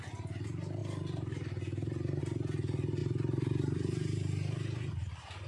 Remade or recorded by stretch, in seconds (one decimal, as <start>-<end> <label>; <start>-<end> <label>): 0.0-3.0 recorded; 3.0-5.5 remade